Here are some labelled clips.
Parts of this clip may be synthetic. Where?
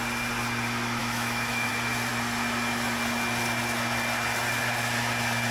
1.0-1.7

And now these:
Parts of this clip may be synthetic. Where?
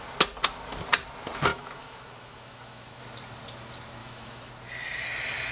1.5-3.0; 4.0-4.5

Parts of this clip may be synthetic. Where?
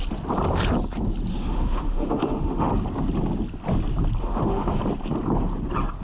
1.3-2.7; 4.2-4.8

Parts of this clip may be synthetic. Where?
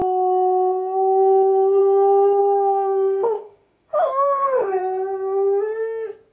2.4-4.8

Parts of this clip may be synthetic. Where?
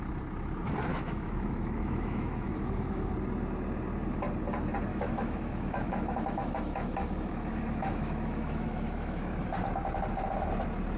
0.9-3.1; 4.9-9.3